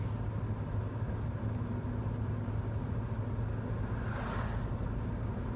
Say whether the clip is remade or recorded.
recorded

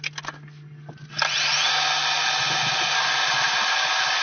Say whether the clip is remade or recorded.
recorded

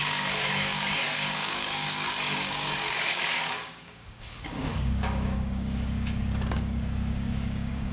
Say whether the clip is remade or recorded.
remade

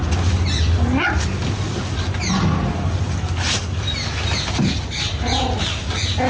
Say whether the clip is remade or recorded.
recorded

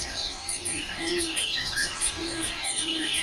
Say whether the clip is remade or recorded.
remade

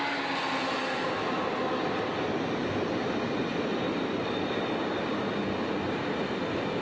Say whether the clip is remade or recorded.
recorded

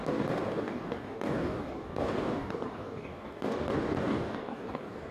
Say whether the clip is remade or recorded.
remade